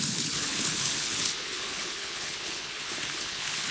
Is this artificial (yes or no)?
yes